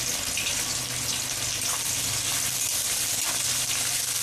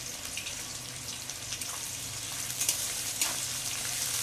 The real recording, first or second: first